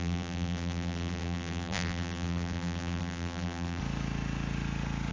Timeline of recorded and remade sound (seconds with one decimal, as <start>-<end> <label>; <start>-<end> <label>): 0.0-3.8 remade; 3.8-5.1 recorded